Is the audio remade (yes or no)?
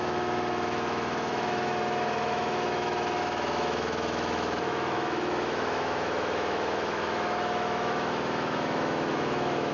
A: yes